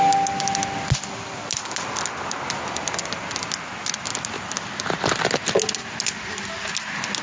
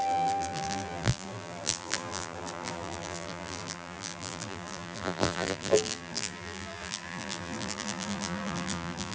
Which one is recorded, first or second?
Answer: first